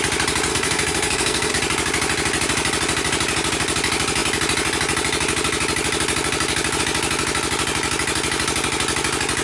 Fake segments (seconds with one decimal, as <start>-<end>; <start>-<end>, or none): 0.5-1.5